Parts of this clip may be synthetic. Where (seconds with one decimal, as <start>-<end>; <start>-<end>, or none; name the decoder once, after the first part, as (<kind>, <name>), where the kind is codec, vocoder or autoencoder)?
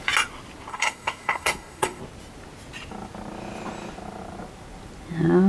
0.7-2.0 (codec, SNAC)